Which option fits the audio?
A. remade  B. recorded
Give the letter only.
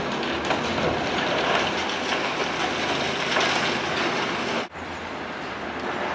B